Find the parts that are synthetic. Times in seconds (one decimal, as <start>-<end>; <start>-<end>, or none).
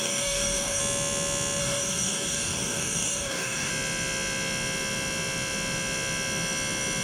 0.0-0.8; 1.6-3.7